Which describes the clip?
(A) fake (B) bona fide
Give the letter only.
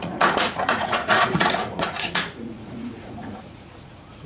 A